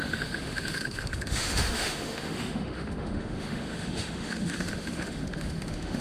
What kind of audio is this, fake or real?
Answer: fake